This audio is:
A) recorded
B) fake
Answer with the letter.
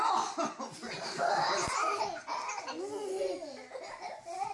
A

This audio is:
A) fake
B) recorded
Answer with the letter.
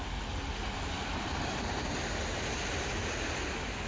B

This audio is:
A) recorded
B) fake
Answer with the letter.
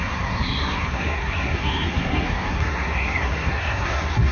B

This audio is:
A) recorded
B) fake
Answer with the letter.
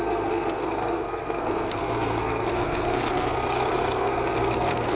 B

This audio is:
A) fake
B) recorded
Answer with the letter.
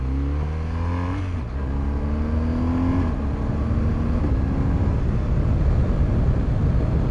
B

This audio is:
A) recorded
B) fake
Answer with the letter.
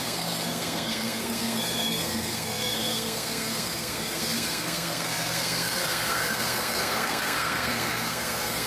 B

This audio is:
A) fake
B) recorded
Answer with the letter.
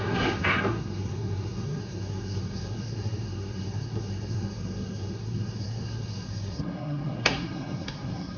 A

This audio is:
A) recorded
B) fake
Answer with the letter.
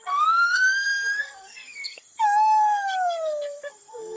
B